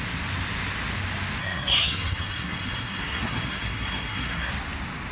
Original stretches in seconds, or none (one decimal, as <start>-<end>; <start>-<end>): 0.0-1.4; 4.5-5.1